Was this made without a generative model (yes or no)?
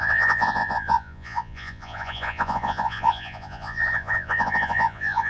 no